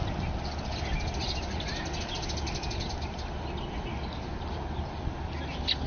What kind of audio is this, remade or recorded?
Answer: recorded